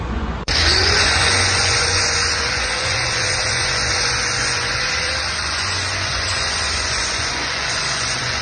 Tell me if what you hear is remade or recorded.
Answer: remade